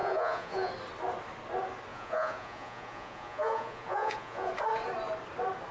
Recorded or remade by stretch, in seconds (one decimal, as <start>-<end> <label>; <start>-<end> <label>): 0.0-0.7 remade; 0.7-1.9 recorded; 1.9-4.5 remade; 4.5-5.7 recorded